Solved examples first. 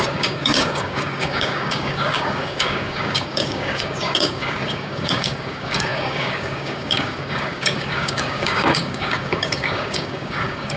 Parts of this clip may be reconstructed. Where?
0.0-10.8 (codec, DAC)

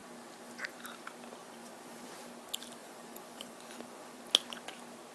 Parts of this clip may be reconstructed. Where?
1.4-2.1 (vocoder, Vocos); 2.8-4.2

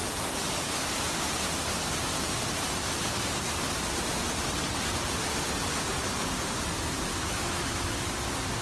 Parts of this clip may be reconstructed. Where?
7.1-8.1 (autoencoder, DAC-VAE)

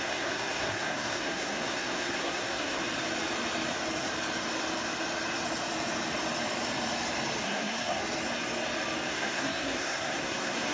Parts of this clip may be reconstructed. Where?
0.0-2.8 (codec, SNAC); 7.4-8.0; 9.1-10.7

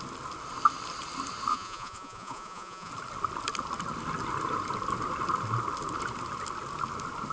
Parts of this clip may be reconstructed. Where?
1.5-2.9 (vocoder, Vocos)

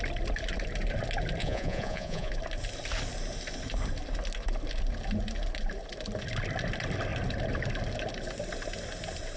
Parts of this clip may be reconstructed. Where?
1.4-2.3 (vocoder, Vocos)